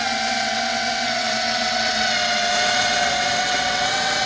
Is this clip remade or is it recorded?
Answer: remade